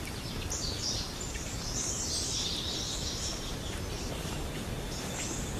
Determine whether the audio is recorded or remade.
recorded